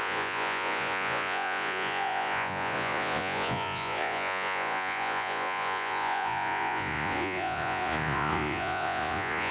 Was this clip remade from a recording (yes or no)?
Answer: yes